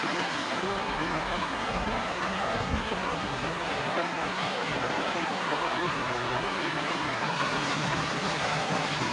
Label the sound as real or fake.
fake